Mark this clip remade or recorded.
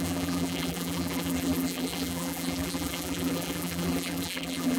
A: remade